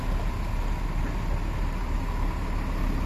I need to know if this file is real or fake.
real